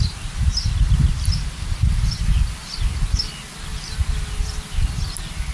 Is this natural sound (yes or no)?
yes